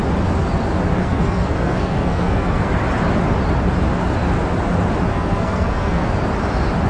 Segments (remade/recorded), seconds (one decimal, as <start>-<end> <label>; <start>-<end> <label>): 0.0-1.0 recorded; 1.0-2.7 remade; 2.7-5.1 recorded; 5.1-6.1 remade; 6.1-6.9 recorded